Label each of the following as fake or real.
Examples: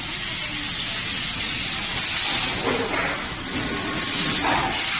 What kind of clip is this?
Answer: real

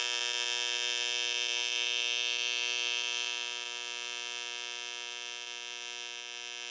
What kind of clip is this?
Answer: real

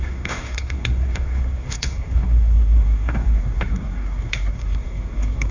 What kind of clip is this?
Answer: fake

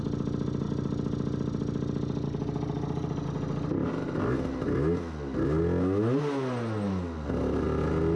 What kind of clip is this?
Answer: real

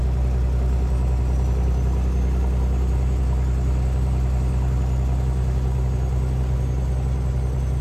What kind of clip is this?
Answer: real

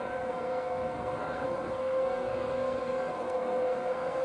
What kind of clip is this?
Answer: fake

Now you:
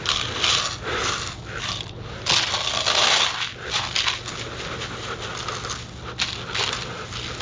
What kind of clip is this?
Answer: real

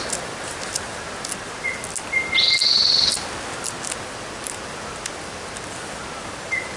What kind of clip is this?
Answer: real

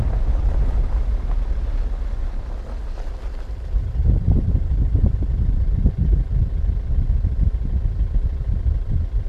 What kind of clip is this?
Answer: real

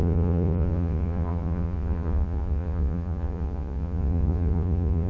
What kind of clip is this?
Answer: fake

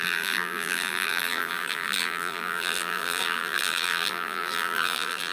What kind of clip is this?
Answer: fake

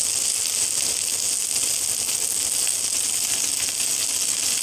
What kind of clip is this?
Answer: real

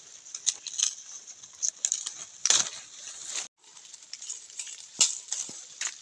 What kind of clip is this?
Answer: real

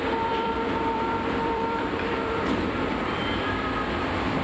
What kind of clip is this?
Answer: fake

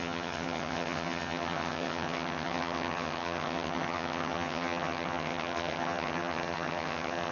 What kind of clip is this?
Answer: fake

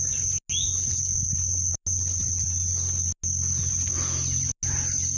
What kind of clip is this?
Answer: real